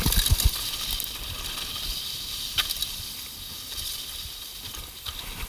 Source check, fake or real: real